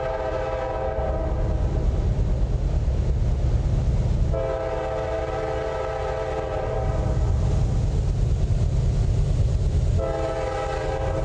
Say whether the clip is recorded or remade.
recorded